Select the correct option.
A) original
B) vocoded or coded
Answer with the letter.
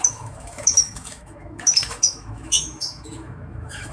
B